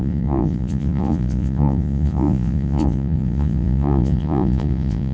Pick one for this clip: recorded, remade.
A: remade